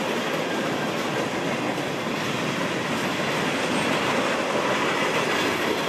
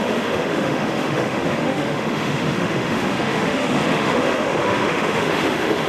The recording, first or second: first